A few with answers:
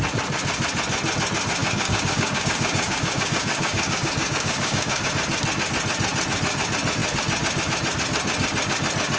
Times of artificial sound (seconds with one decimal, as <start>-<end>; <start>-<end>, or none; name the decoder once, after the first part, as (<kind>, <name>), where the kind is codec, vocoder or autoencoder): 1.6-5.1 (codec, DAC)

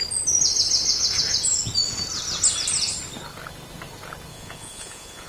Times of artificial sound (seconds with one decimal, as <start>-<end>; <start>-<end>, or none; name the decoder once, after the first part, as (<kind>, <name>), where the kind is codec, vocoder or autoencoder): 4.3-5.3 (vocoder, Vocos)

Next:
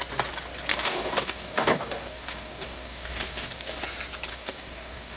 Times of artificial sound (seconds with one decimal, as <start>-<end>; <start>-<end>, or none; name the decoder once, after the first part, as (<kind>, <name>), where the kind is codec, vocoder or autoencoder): 0.7-3.8 (codec, DAC); 4.3-5.2

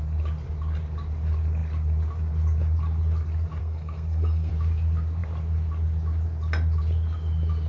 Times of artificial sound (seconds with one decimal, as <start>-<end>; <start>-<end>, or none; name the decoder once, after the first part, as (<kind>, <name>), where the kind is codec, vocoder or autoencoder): 3.6-4.5 (codec, SNAC)